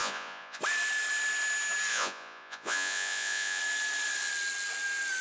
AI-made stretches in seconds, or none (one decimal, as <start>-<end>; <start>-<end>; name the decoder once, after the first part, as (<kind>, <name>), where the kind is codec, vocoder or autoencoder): 0.0-0.6 (vocoder, Vocos); 1.9-3.6